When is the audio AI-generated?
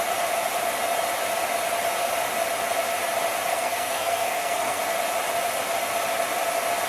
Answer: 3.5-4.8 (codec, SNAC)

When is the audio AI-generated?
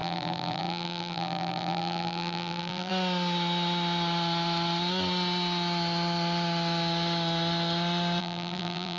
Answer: 0.0-2.9 (vocoder, BigVGAN v2); 8.2-9.0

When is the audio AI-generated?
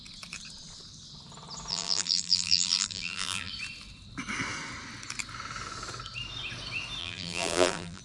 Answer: 1.7-3.5 (vocoder, BigVGAN v2); 7.0-8.0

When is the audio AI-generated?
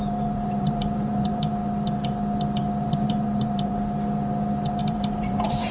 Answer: 0.0-1.6 (vocoder, BigVGAN v2); 2.9-3.7; 4.8-5.7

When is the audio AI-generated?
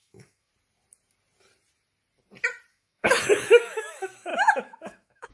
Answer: 0.0-0.5 (autoencoder, DAC-VAE); 2.7-5.3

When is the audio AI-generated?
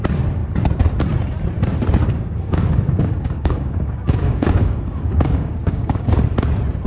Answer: 2.0-6.1 (codec, DAC)